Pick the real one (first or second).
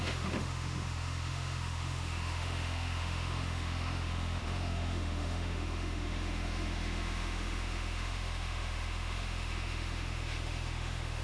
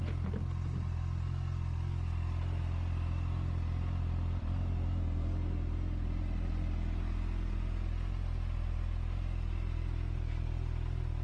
second